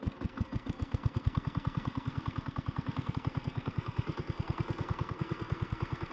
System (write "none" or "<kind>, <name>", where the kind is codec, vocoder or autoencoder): codec, SNAC